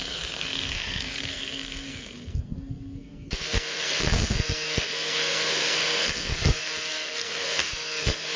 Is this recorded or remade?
remade